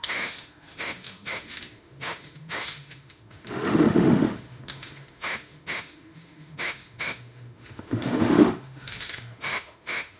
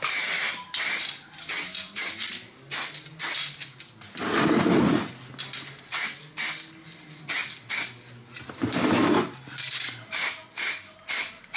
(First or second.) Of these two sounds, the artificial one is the first